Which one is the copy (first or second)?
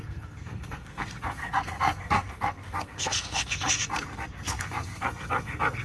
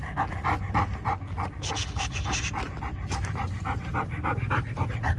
first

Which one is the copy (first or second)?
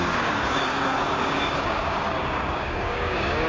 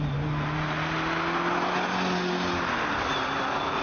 first